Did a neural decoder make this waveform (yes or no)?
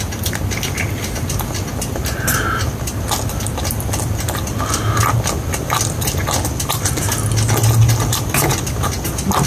no